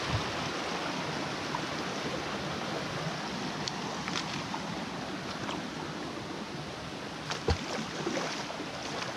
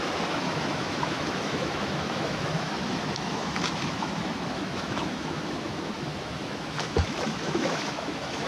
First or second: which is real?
first